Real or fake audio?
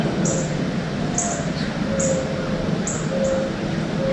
real